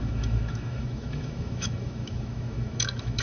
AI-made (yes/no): yes